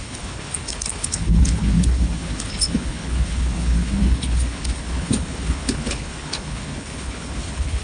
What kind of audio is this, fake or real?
fake